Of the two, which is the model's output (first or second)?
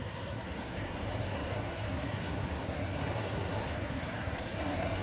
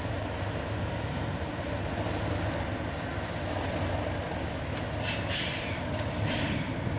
first